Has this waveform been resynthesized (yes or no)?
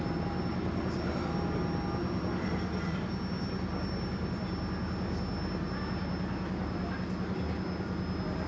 no